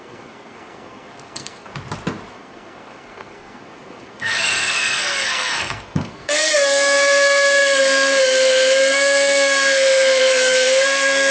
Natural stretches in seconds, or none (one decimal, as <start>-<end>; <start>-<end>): 1.7-2.3

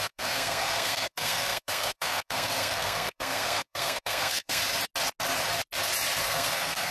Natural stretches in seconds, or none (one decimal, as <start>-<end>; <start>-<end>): 4.6-6.2